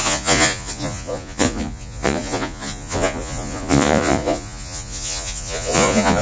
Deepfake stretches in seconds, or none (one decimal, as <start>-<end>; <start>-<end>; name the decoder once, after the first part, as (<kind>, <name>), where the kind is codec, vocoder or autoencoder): 0.0-6.2 (vocoder, Vocos)